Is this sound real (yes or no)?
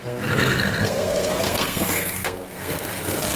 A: no